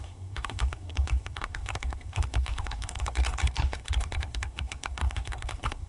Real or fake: fake